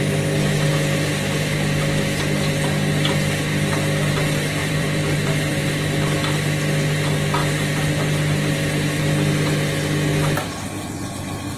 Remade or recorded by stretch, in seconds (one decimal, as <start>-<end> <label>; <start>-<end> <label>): 0.0-4.6 recorded; 4.6-5.5 remade; 5.5-11.6 recorded